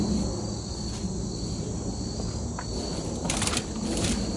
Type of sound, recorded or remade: recorded